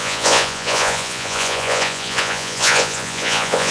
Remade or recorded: remade